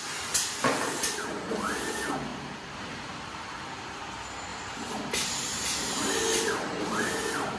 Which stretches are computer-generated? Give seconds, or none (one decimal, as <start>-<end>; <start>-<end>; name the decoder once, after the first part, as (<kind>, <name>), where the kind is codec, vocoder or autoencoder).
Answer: 2.3-4.0 (vocoder, BigVGAN v2); 4.5-5.0

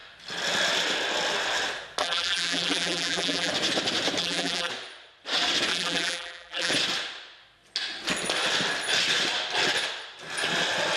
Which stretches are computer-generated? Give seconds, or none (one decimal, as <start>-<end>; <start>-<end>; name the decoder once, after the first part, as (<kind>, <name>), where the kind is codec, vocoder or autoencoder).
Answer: 2.0-3.5 (vocoder, BigVGAN v2); 4.2-4.7; 5.7-6.7

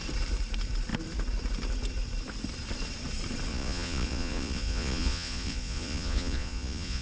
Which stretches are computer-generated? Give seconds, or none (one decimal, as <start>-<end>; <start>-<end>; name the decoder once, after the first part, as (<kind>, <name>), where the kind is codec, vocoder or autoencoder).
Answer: 3.5-7.0 (vocoder, Vocos)